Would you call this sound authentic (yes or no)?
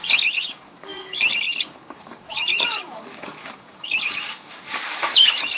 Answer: no